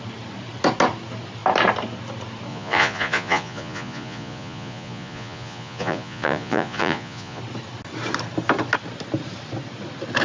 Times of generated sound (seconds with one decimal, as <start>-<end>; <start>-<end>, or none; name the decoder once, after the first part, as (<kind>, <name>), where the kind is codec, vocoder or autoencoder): 2.5-7.4 (vocoder, Vocos)

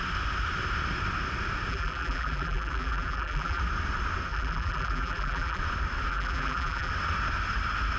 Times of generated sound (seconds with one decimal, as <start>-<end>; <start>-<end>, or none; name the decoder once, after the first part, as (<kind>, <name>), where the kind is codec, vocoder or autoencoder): 1.7-3.6 (vocoder, BigVGAN v2); 4.3-5.6; 6.1-6.9

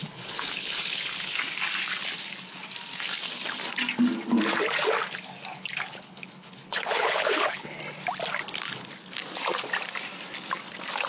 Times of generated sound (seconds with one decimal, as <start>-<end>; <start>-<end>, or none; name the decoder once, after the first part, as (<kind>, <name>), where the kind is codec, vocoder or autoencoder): 0.0-1.4 (codec, HILCodec); 5.5-7.8

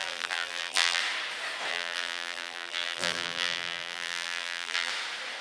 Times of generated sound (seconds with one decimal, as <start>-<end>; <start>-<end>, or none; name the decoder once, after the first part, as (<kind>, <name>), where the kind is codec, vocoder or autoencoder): 0.0-1.0 (vocoder, BigVGAN v2); 1.7-4.9